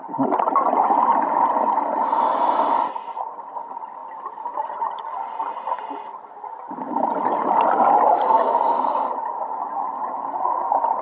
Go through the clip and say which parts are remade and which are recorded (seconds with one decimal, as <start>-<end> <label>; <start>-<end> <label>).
0.0-11.0 recorded